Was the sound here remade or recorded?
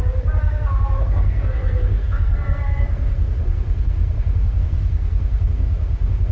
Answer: remade